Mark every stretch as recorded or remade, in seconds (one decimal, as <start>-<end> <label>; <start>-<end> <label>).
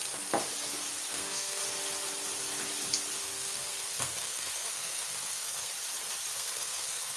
0.0-1.1 recorded; 1.1-1.6 remade; 1.6-3.2 recorded; 3.2-5.7 remade; 5.7-6.3 recorded; 6.3-7.2 remade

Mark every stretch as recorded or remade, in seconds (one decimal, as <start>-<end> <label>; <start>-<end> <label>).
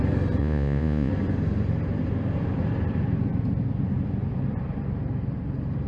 0.0-0.4 recorded; 0.4-1.1 remade; 1.1-5.9 recorded